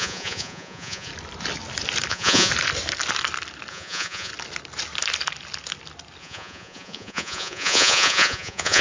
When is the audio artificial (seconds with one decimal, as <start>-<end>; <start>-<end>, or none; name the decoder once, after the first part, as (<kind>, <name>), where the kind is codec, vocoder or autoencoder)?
0.0-1.1 (vocoder, Vocos); 2.1-2.5; 3.7-4.3; 6.2-8.8